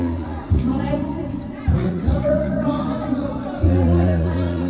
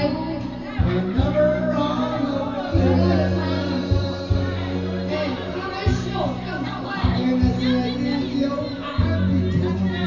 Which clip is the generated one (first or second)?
first